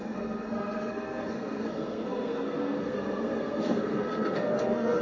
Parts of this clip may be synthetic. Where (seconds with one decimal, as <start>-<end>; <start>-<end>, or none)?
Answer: 0.0-5.0